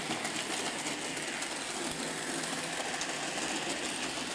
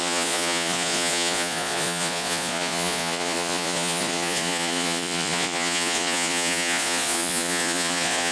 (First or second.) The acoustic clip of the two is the first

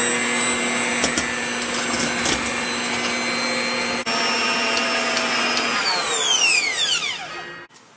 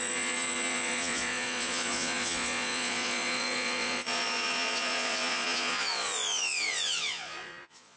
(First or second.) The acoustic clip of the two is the first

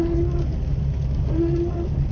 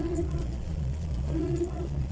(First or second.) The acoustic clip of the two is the first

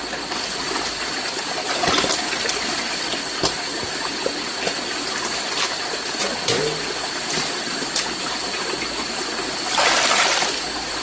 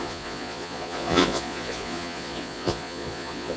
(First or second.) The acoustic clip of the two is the first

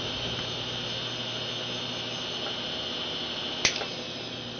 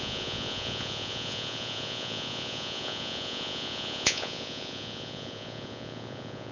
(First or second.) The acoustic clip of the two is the first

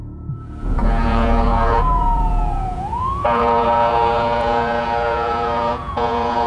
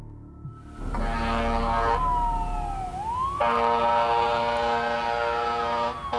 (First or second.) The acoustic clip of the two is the second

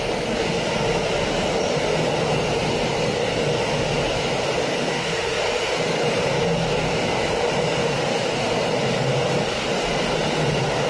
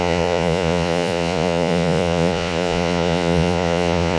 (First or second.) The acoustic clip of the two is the first